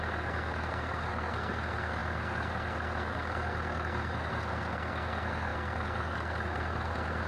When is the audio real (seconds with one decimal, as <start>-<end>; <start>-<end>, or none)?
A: none